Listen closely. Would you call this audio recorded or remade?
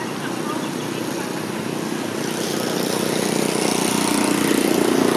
recorded